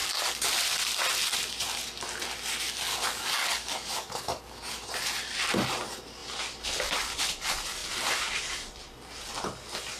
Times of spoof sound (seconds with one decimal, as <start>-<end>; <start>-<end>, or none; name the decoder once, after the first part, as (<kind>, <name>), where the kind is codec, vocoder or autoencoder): 2.9-4.9 (codec, DAC)